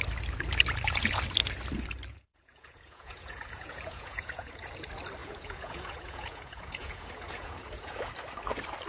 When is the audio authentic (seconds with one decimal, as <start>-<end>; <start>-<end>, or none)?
0.0-2.1; 4.7-5.2; 8.1-8.9